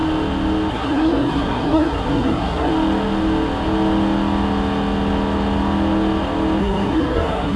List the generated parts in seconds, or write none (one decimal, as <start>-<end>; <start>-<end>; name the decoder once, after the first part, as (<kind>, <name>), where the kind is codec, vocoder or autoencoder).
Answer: 0.7-2.7 (codec, SNAC); 6.6-7.6